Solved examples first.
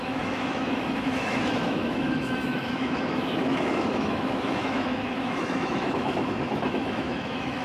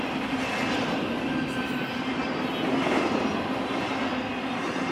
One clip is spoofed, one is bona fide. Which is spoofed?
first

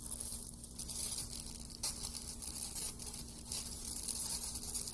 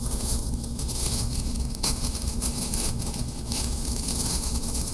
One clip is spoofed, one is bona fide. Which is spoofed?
second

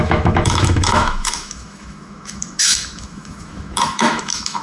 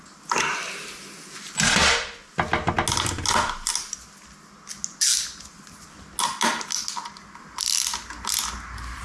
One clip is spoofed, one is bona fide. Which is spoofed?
first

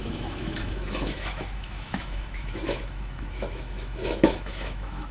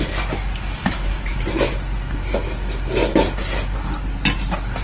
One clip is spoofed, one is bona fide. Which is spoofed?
first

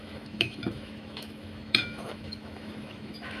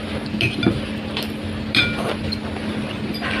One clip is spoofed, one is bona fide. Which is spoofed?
first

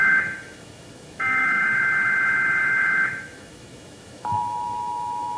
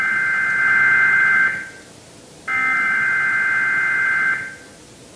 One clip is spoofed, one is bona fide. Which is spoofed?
first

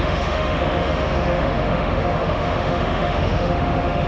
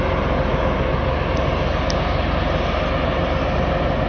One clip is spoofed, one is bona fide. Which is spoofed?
first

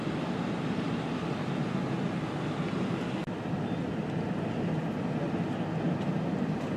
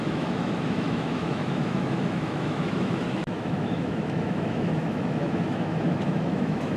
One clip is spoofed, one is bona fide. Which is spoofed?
second